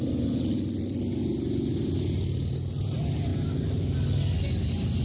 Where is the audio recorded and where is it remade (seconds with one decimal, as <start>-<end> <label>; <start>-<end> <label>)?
0.0-5.0 recorded